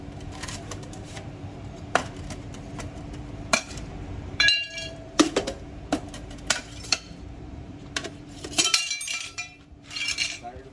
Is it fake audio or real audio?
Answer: fake